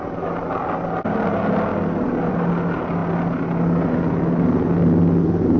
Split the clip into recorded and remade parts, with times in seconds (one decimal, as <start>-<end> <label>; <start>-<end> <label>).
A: 0.0-5.6 recorded